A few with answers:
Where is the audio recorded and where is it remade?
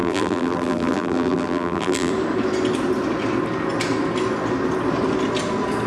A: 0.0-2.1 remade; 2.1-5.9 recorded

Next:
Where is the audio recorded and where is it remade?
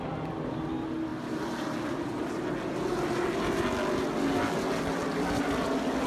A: 0.0-6.1 recorded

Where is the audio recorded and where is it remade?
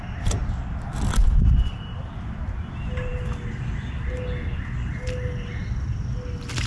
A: 0.0-6.7 recorded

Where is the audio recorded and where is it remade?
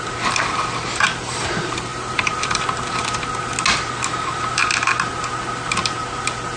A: 0.0-1.9 recorded; 1.9-2.6 remade; 2.6-6.6 recorded